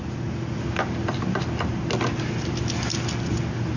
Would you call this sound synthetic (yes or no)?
no